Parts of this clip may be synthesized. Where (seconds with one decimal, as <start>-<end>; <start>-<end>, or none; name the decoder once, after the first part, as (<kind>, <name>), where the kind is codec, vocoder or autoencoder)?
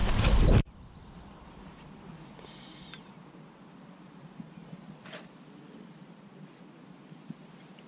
0.0-7.9 (vocoder, BigVGAN v2)